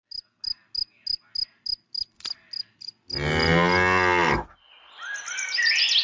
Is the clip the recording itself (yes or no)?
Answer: yes